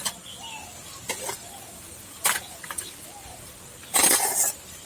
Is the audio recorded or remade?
remade